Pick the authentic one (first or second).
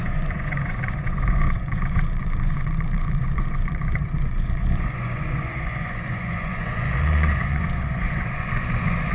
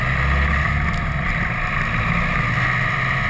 second